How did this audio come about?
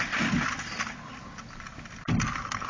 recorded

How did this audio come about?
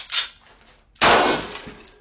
recorded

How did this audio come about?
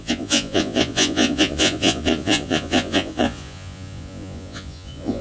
remade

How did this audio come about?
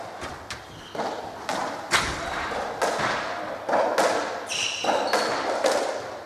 recorded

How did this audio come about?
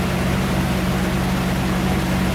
recorded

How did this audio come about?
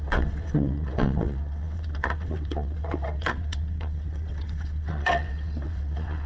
remade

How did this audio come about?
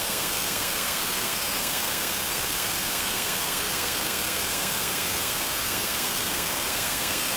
remade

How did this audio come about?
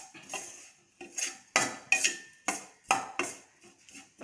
recorded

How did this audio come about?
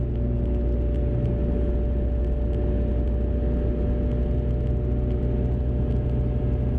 recorded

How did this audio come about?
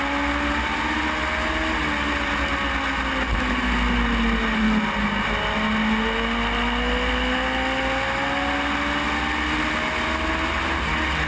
recorded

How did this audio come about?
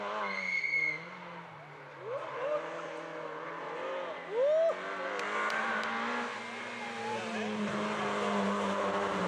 recorded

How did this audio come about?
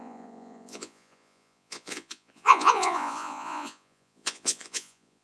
remade